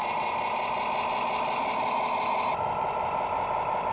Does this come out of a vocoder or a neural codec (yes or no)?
no